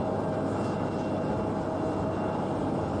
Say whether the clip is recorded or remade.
recorded